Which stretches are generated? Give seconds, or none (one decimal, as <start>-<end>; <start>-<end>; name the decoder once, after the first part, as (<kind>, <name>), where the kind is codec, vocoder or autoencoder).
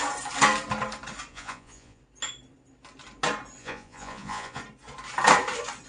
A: 1.3-2.0 (vocoder, Vocos); 3.6-4.6